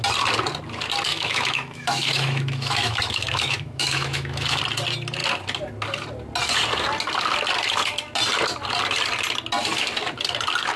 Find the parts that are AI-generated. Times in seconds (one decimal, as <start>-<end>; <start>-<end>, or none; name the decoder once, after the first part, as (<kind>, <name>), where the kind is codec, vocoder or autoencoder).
1.1-4.6 (autoencoder, DAC-VAE)